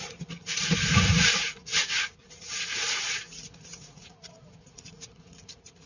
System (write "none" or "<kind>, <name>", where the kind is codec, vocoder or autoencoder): vocoder, Vocos